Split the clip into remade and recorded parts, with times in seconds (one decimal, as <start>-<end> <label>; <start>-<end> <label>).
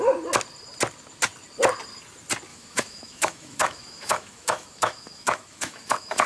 0.0-2.5 recorded; 2.5-6.3 remade